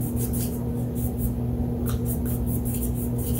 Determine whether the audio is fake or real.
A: real